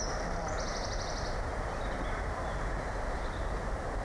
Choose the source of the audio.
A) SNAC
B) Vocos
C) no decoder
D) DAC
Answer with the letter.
C